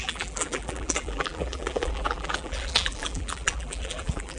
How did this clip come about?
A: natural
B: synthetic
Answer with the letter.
B